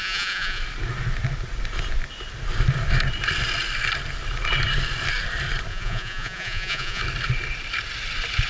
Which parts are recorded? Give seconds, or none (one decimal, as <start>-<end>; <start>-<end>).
0.6-5.7; 7.0-8.5

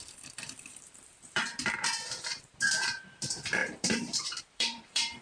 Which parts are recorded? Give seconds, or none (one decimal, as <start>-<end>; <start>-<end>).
none